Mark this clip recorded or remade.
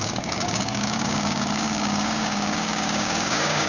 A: remade